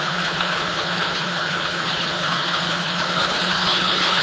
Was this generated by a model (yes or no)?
yes